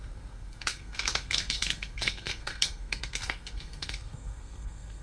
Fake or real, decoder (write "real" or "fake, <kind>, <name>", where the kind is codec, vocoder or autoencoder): fake, codec, SNAC